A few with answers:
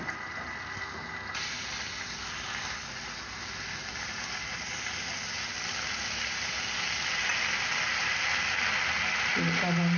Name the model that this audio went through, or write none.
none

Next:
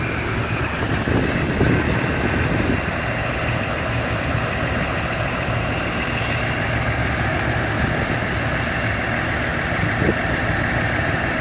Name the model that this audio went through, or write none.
none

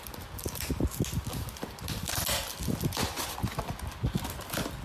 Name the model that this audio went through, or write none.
none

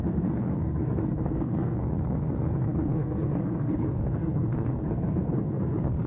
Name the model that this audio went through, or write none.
codec, SNAC